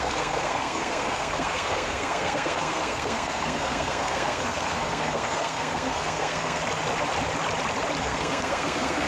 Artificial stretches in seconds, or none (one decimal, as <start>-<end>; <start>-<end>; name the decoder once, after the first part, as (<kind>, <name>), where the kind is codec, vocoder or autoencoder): 0.0-6.6 (codec, SNAC); 8.0-9.1